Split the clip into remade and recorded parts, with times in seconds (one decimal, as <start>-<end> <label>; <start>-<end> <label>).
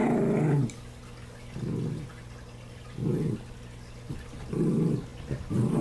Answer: 0.0-5.8 recorded